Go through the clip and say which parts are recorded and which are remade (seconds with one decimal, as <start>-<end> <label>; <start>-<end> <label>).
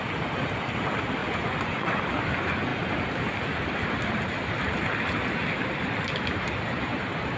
0.0-1.2 recorded; 1.2-2.0 remade; 2.0-7.4 recorded